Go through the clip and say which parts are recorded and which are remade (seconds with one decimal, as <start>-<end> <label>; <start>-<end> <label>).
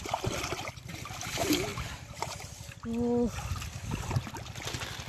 0.0-5.1 recorded